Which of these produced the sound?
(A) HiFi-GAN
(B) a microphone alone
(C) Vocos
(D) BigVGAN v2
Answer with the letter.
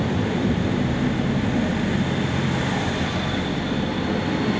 D